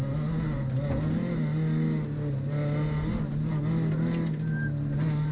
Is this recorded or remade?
recorded